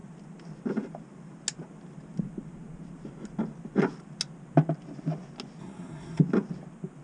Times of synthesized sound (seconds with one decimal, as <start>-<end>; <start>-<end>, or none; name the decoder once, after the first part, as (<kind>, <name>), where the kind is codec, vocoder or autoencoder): 5.6-6.2 (codec, SNAC)